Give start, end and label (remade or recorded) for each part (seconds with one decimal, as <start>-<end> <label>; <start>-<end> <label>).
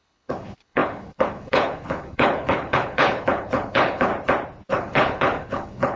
0.0-4.1 remade; 4.1-4.7 recorded; 4.7-6.0 remade